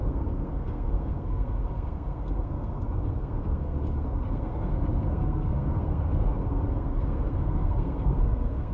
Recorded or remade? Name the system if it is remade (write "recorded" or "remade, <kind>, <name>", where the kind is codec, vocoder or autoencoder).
remade, codec, SNAC